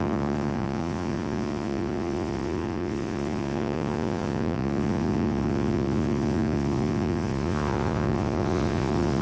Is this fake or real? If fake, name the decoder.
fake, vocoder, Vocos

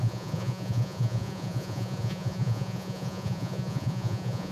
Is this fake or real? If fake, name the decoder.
fake, vocoder, Vocos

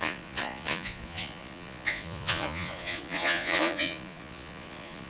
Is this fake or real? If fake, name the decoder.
fake, vocoder, Vocos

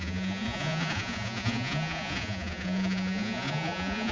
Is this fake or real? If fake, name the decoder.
fake, vocoder, Vocos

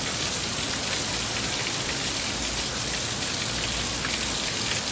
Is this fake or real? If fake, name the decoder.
real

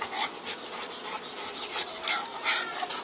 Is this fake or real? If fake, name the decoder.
real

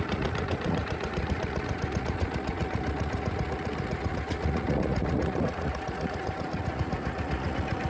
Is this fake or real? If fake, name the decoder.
fake, vocoder, Vocos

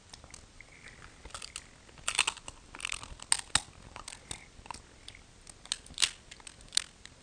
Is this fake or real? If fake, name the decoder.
real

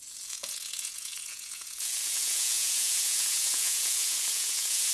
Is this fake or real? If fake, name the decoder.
fake, vocoder, Vocos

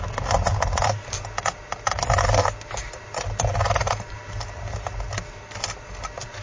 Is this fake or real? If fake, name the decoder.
real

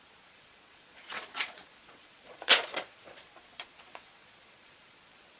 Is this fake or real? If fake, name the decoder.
fake, vocoder, Vocos